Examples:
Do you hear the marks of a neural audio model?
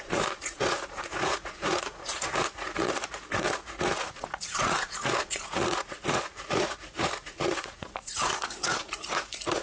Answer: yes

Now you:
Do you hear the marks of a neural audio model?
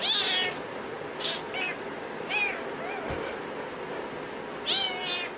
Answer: no